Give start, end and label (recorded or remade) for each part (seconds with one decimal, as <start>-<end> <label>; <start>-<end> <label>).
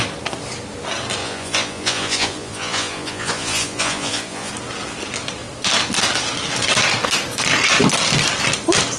0.0-1.2 recorded; 1.2-4.5 remade; 4.5-9.0 recorded